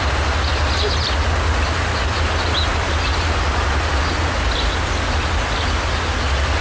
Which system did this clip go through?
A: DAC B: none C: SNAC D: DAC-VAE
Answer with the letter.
B